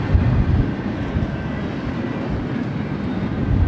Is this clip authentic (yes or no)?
yes